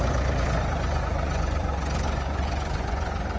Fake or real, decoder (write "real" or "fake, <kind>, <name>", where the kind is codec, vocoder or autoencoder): fake, vocoder, Vocos